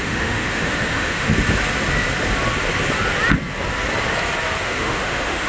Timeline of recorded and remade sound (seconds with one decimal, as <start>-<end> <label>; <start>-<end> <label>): 0.0-1.3 remade; 1.3-4.6 recorded; 4.6-5.5 remade